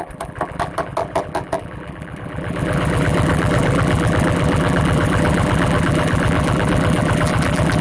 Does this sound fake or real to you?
fake